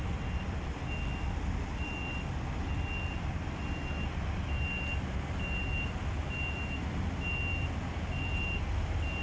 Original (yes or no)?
yes